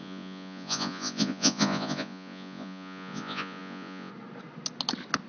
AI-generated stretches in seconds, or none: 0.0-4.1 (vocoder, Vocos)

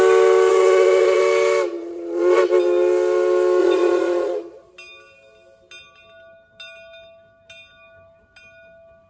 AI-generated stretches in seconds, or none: 0.5-1.2 (vocoder, Vocos); 1.8-2.4; 3.6-4.7

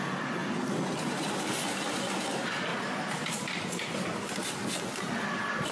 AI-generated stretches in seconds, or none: 2.7-3.3 (vocoder, BigVGAN v2)

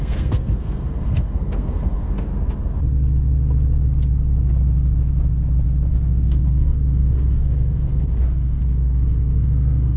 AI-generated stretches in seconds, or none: 0.0-2.3 (codec, SNAC); 5.9-10.0